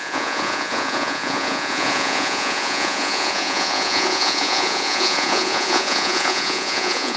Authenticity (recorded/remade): remade